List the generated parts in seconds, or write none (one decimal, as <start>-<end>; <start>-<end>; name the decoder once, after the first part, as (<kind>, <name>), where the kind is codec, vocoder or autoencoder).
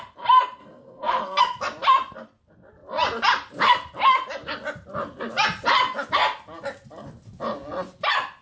0.6-1.4 (codec, SNAC)